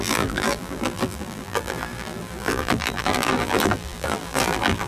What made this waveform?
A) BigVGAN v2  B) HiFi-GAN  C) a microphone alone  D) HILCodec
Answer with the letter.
A